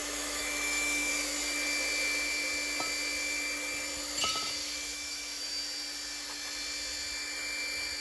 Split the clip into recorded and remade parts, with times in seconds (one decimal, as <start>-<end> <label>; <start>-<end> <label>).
0.0-1.1 remade; 1.1-4.6 recorded; 4.6-5.6 remade; 5.6-8.0 recorded